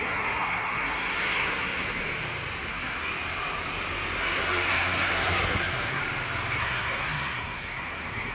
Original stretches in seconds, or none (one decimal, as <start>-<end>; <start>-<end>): 2.0-2.7; 3.1-4.2; 6.0-6.6